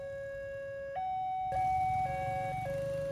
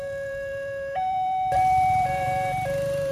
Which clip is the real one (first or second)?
first